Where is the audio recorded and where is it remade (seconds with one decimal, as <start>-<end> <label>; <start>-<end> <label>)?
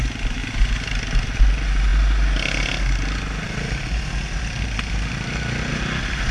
0.0-6.3 recorded